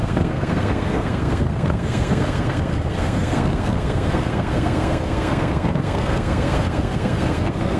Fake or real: fake